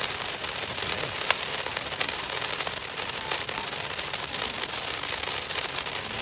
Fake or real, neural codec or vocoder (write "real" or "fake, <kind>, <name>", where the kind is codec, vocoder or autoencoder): real